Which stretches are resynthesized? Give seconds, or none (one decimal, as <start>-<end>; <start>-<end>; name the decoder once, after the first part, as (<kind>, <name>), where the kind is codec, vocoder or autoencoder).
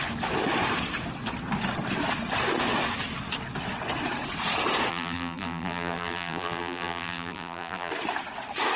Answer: 4.9-7.9 (vocoder, BigVGAN v2)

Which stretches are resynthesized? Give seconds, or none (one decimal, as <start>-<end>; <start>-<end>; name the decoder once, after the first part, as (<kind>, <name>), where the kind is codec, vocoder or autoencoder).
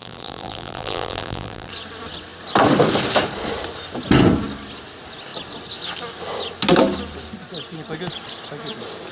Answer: 0.0-1.7 (vocoder, BigVGAN v2)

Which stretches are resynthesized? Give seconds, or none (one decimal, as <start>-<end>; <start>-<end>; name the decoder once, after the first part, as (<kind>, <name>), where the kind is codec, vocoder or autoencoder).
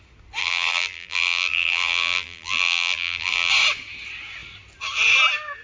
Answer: 0.4-3.5 (vocoder, BigVGAN v2)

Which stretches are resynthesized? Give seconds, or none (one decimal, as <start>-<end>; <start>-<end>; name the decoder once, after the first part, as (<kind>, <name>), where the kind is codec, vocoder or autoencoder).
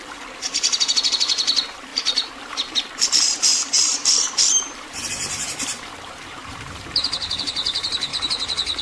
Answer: 0.0-8.1 (vocoder, BigVGAN v2)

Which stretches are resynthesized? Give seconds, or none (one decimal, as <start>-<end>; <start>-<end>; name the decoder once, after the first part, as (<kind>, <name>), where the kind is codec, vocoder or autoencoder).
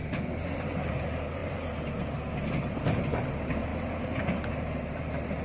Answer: 0.9-1.4 (vocoder, BigVGAN v2); 2.5-3.7; 4.4-5.4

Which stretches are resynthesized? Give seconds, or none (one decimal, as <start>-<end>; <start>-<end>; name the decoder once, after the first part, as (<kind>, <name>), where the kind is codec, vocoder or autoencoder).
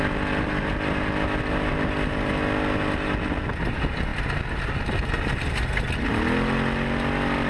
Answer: none